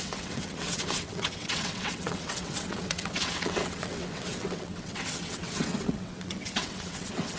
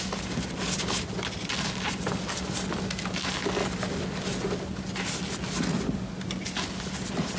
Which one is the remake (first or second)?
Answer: first